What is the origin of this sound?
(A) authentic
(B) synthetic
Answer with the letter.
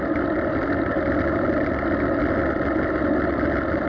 A